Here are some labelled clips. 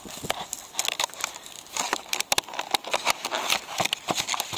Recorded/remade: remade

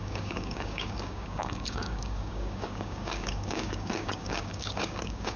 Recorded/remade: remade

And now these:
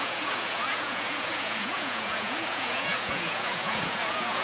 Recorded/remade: remade